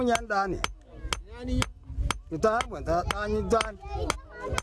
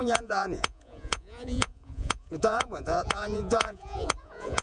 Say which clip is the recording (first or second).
first